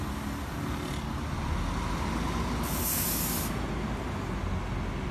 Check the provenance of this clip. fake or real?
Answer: real